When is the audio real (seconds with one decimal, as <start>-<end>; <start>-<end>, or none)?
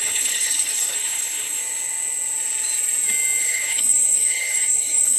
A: 1.6-3.4